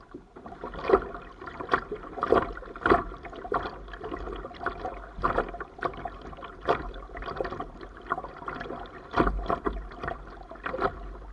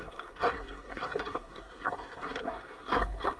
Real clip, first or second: first